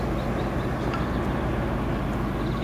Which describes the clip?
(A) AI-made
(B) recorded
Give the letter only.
B